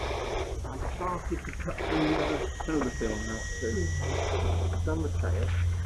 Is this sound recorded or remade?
recorded